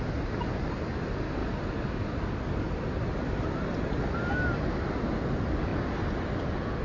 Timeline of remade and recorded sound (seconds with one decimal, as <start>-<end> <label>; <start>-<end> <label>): 0.0-6.8 recorded